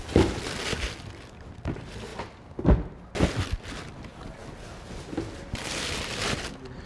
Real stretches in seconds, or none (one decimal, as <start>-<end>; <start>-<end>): 0.0-6.9